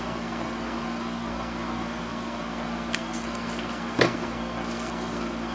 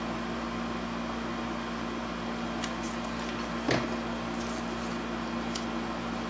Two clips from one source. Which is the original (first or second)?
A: second